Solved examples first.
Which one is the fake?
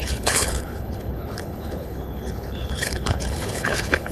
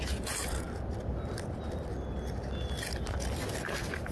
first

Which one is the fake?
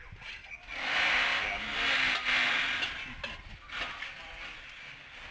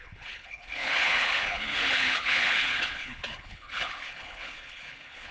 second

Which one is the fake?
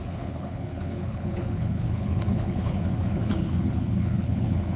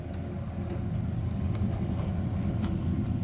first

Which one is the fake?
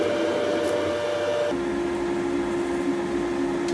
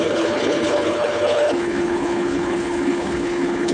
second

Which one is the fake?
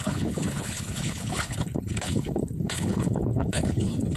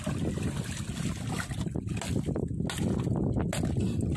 first